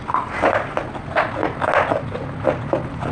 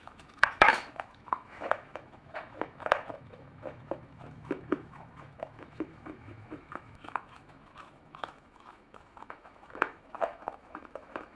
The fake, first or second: second